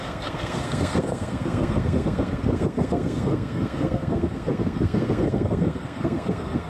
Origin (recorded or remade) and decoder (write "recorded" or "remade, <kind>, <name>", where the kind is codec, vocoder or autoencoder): remade, codec, SNAC